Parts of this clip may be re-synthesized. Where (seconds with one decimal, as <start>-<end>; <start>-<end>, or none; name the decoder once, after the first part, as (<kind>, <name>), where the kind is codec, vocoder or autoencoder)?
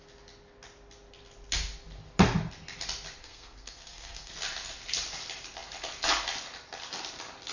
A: 3.2-4.3 (codec, SNAC)